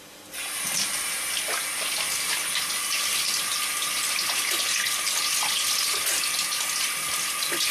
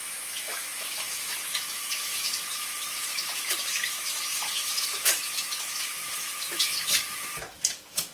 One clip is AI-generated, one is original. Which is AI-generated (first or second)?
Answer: second